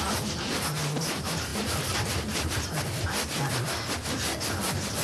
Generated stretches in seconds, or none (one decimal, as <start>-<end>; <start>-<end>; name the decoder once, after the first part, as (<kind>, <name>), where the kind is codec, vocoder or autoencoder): none